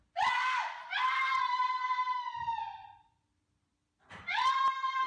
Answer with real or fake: real